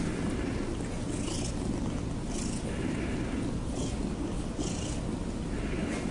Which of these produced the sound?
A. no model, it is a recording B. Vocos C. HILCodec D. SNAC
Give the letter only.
A